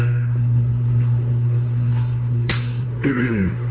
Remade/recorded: remade